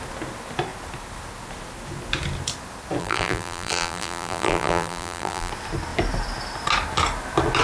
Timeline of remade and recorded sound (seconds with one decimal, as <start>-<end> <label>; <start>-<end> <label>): 0.0-3.0 recorded; 3.0-5.5 remade; 5.5-7.6 recorded